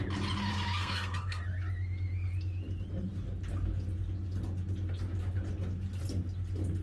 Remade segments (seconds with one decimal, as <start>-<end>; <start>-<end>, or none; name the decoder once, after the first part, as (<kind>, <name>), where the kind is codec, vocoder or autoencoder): 0.5-1.4 (codec, SNAC)